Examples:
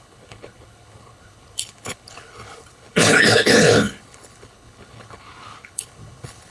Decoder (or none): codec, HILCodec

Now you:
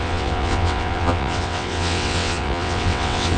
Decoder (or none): vocoder, WaveNeXt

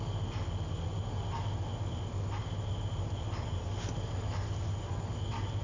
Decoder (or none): none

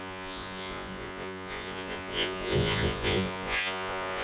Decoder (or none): vocoder, Vocos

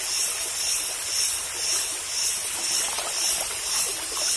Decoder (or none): none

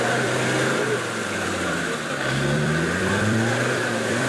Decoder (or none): vocoder, BigVGAN v2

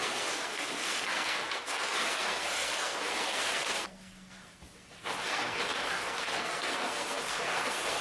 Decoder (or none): codec, SNAC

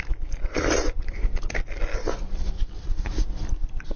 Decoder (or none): none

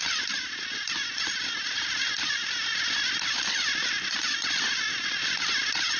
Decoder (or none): none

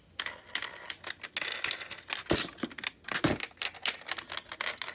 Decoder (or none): none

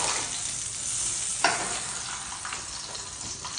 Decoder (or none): none